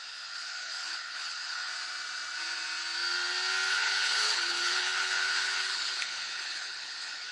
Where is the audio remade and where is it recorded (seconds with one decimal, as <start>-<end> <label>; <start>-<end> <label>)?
0.0-1.7 remade; 1.7-3.7 recorded; 3.7-7.3 remade